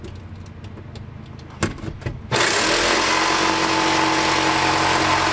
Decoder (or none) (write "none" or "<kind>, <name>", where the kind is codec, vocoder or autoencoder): none